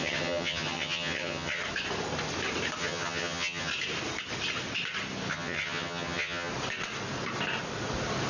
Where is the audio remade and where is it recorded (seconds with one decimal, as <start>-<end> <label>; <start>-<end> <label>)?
0.0-1.6 remade; 1.6-2.8 recorded; 2.8-3.7 remade; 3.7-5.3 recorded; 5.3-6.5 remade; 6.5-8.3 recorded

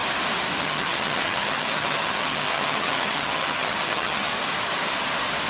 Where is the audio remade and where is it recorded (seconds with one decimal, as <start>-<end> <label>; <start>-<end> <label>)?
0.0-0.6 recorded; 0.6-4.3 remade; 4.3-5.5 recorded

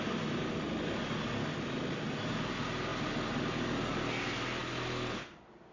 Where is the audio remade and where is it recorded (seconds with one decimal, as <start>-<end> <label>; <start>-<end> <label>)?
0.0-5.7 recorded

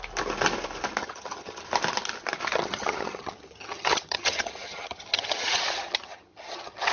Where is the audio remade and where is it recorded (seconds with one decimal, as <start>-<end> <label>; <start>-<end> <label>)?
0.0-1.0 recorded; 1.0-1.6 remade; 1.6-2.5 recorded; 2.5-6.9 remade

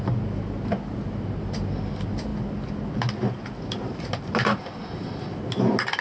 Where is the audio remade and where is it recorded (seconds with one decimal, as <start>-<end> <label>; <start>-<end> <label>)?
0.0-6.0 recorded

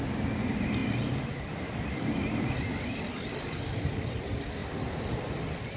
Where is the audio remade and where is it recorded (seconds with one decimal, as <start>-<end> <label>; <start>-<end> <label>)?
0.0-5.8 recorded

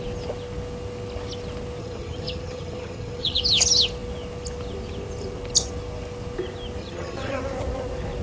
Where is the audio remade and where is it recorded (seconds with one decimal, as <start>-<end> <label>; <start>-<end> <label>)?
0.0-1.8 recorded; 1.8-3.4 remade; 3.4-6.8 recorded; 6.8-7.4 remade; 7.4-8.2 recorded

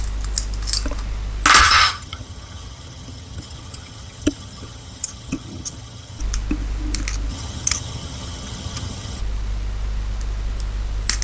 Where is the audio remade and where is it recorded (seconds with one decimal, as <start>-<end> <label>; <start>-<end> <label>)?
0.0-1.6 recorded; 1.6-6.2 remade; 6.2-7.3 recorded; 7.3-9.2 remade; 9.2-11.2 recorded